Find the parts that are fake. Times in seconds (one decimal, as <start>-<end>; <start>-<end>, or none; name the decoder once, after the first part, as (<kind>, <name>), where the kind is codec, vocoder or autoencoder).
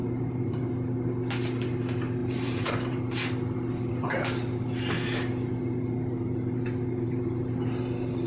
0.0-0.7 (vocoder, BigVGAN v2); 2.2-3.0